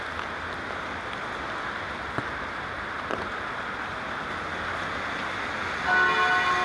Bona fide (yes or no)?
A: yes